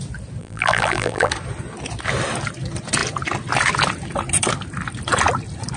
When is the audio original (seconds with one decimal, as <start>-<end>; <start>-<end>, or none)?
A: 0.0-0.4; 1.3-5.8